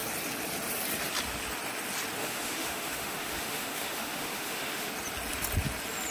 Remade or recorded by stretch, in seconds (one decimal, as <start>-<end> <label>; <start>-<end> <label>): 0.0-2.2 recorded; 2.2-4.9 remade; 4.9-6.1 recorded